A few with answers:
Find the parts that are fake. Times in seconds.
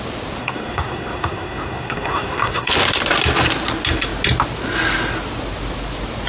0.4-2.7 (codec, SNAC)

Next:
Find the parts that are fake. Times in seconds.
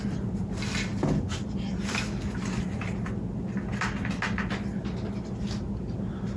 none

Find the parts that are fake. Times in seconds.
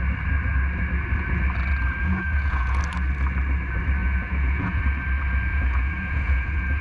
2.0-2.8 (vocoder, Vocos); 4.0-4.8; 5.5-6.8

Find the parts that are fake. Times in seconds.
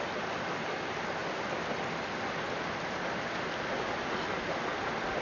none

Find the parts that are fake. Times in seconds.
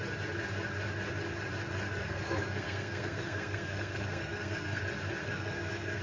2.0-4.8 (codec, SNAC); 5.2-6.0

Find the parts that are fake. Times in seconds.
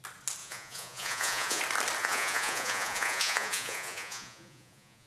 0.4-1.6 (vocoder, Vocos); 2.0-5.1